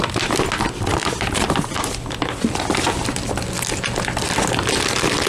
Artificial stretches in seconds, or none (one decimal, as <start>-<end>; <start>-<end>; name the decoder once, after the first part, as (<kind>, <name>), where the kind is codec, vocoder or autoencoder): none